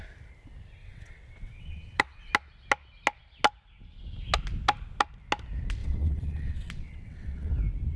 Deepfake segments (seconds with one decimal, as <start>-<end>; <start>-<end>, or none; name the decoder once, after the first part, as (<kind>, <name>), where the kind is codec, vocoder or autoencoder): 0.8-2.3 (vocoder, WaveNeXt); 5.8-7.5